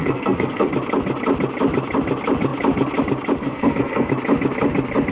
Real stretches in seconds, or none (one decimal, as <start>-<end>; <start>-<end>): 0.7-3.4; 4.1-5.1